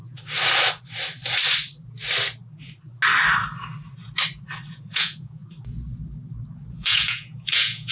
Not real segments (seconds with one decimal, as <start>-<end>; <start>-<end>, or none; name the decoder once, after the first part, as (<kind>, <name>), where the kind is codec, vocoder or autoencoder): 4.7-5.4 (vocoder, Vocos); 6.7-7.9

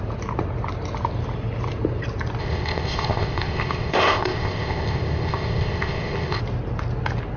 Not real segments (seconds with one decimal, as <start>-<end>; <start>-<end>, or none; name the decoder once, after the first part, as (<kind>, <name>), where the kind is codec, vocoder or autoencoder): 2.4-6.4 (codec, ZipCodec)